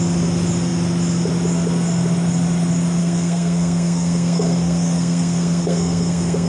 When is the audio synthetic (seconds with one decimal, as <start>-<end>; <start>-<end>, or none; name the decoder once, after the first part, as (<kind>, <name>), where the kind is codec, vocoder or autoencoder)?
3.0-6.5 (codec, SNAC)